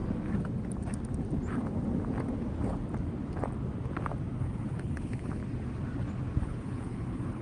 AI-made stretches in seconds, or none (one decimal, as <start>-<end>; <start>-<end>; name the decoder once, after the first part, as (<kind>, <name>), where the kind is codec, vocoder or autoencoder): 4.4-5.4 (codec, HILCodec); 6.4-7.4